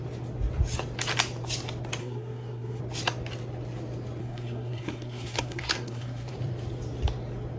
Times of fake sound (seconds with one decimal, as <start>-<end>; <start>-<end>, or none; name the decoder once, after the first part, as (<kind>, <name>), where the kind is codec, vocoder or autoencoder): 2.0-2.8 (codec, SNAC); 4.2-6.3